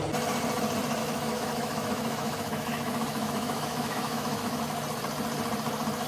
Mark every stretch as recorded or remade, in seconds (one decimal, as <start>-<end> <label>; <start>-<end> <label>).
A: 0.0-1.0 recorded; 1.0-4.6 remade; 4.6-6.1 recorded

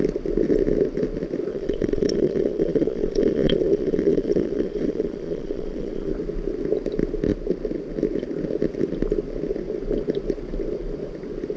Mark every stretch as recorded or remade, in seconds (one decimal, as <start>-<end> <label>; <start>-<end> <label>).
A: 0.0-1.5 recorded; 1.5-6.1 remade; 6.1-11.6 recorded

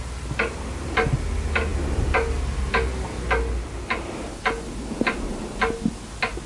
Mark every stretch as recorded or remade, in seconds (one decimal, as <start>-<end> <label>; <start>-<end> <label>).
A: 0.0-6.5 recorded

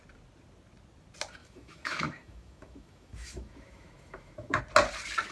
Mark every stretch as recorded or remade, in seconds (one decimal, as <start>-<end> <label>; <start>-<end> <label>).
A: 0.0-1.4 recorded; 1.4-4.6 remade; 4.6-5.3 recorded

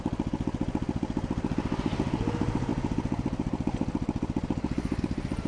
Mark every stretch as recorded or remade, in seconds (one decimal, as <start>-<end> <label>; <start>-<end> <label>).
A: 0.0-5.5 recorded

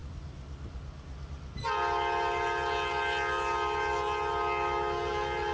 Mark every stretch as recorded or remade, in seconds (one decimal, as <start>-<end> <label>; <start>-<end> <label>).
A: 0.0-5.5 recorded

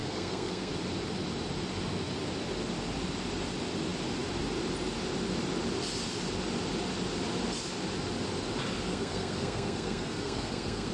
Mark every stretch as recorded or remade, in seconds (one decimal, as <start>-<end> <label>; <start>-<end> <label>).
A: 0.0-0.7 remade; 0.7-8.9 recorded; 8.9-10.9 remade

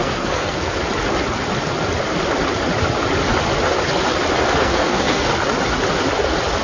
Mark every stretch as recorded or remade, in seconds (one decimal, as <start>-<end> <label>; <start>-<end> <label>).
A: 0.0-0.6 remade; 0.6-4.6 recorded; 4.6-5.3 remade; 5.3-6.6 recorded